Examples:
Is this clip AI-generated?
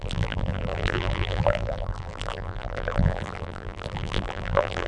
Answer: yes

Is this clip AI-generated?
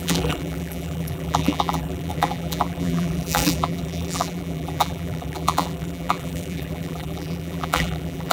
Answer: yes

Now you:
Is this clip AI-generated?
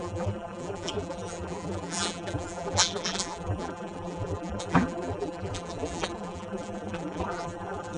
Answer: yes